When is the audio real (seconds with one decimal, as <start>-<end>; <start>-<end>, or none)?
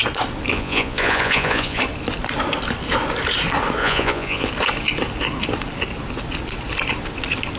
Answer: 0.0-0.5; 1.8-3.8; 4.5-7.6